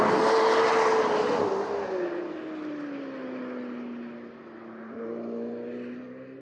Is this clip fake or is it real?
real